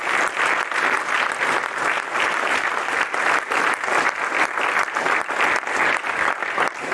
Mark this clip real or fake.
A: real